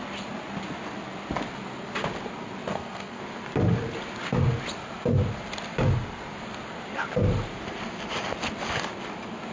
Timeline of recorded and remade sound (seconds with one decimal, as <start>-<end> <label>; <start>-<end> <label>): 0.0-2.7 recorded; 2.7-3.2 remade; 3.2-9.5 recorded